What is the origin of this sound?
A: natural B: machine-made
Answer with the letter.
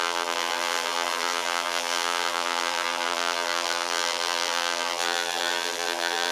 B